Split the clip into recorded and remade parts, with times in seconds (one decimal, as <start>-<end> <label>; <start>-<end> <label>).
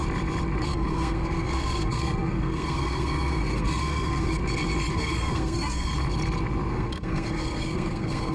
0.0-0.6 recorded; 0.6-4.4 remade; 4.4-4.9 recorded; 4.9-5.9 remade; 5.9-6.7 recorded; 6.7-8.3 remade